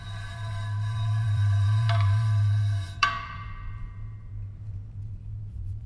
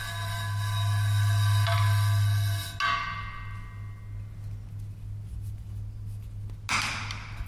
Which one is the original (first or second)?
second